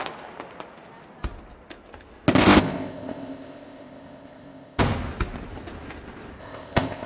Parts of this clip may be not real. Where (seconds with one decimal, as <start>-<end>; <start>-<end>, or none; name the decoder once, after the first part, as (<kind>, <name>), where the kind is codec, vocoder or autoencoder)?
2.4-4.8 (codec, ZipCodec); 6.4-7.1